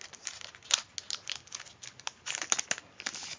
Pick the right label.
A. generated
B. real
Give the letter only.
B